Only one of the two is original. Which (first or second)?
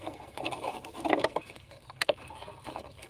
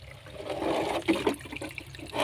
second